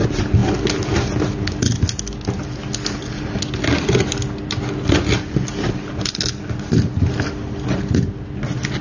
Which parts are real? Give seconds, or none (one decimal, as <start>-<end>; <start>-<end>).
0.0-8.8